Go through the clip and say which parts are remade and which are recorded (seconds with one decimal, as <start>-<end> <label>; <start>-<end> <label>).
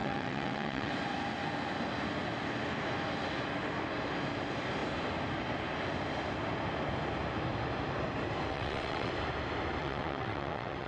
0.0-0.9 remade; 0.9-8.5 recorded; 8.5-9.1 remade; 9.1-9.8 recorded; 9.8-10.9 remade